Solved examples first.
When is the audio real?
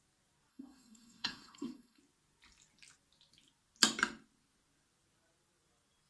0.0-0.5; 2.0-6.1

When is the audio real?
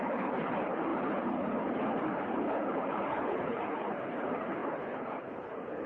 none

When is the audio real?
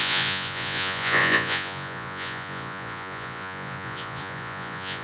none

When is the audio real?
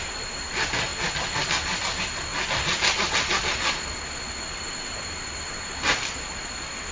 0.0-6.9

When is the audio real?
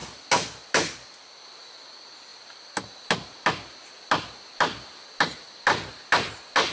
0.0-6.7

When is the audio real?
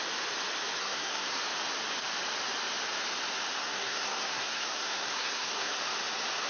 0.0-0.8; 1.4-3.6; 5.8-6.5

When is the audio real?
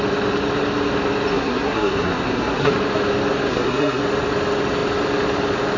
0.0-1.3; 2.7-3.5; 4.0-5.8